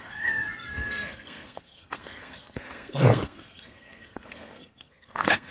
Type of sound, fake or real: fake